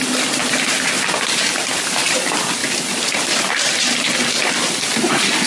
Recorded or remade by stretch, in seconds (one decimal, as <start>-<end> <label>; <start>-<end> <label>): 0.0-5.5 recorded